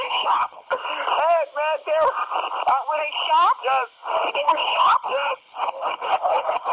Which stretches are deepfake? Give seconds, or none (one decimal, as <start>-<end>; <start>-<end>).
0.0-0.8; 4.3-6.7